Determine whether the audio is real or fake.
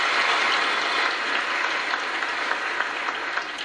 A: real